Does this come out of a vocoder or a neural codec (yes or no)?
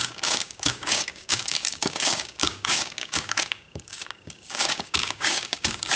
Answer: yes